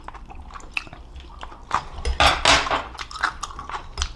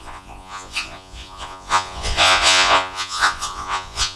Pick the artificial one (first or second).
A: second